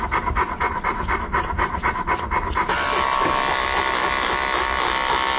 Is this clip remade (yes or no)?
no